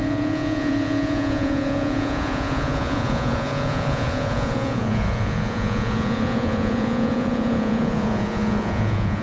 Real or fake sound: fake